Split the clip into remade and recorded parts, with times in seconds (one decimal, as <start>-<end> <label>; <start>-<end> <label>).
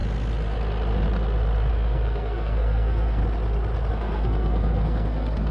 0.0-1.7 recorded; 1.7-3.2 remade; 3.2-3.9 recorded; 3.9-5.5 remade